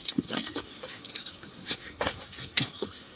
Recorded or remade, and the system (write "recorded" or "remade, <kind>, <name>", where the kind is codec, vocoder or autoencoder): remade, codec, SNAC